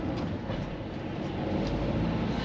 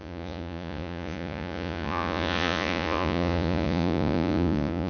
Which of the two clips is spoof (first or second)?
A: second